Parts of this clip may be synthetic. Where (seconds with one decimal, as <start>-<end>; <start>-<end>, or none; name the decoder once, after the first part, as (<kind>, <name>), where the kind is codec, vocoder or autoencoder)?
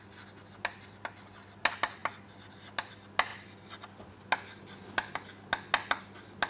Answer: none